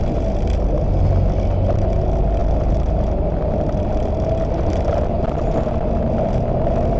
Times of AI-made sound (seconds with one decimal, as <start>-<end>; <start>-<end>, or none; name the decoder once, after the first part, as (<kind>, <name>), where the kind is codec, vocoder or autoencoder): none